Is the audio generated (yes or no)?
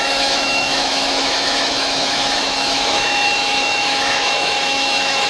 yes